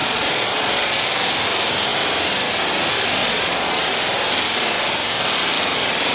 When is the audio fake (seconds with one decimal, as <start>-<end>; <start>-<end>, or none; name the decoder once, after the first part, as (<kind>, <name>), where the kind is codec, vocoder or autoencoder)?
0.0-1.0 (vocoder, Vocos); 3.2-3.9